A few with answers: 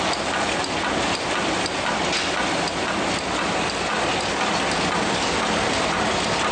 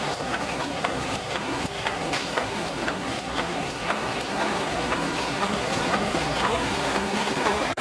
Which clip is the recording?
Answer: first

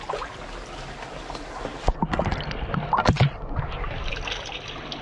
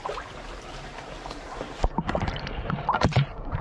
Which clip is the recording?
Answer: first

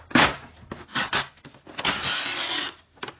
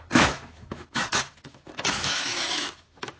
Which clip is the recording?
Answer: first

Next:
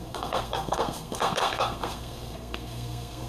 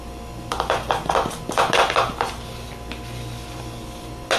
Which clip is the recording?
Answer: second